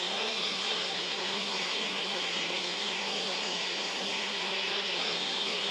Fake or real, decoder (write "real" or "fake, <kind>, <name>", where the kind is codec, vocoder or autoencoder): fake, codec, SNAC